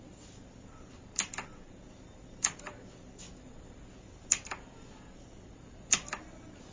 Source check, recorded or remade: recorded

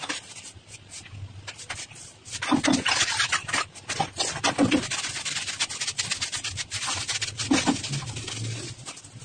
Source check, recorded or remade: recorded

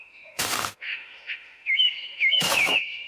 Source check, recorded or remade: remade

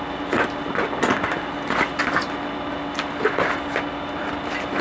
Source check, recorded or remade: recorded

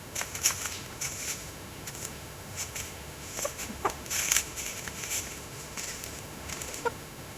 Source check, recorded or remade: remade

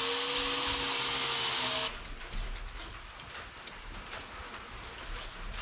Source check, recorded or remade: recorded